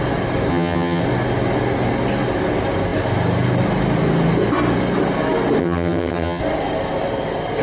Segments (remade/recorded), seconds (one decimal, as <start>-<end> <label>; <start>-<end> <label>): 0.0-0.5 recorded; 0.5-1.0 remade; 1.0-5.6 recorded; 5.6-6.4 remade; 6.4-7.6 recorded